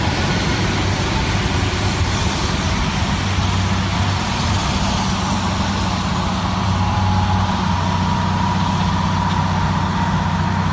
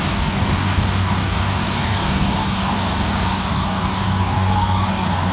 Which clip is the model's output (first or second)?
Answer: second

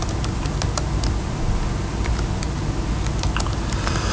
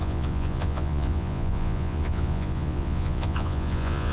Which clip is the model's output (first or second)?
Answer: second